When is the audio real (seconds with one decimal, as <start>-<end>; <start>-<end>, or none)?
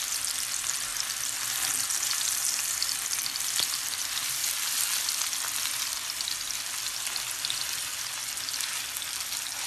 0.0-9.7